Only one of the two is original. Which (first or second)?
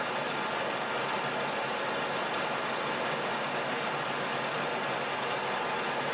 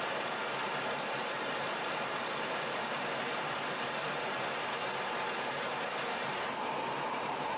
first